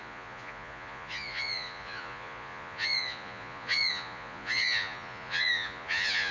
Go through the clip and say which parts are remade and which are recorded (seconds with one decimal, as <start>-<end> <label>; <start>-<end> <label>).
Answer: 0.0-6.3 remade